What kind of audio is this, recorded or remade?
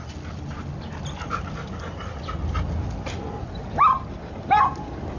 recorded